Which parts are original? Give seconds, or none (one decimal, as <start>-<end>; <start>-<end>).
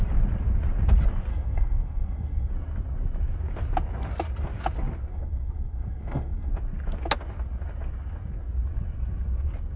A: 0.0-1.3; 2.5-5.1; 6.5-9.8